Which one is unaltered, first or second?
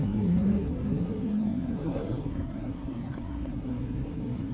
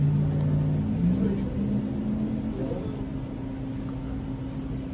second